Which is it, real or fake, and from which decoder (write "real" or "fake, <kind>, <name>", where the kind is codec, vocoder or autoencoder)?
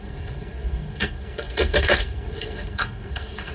fake, codec, SNAC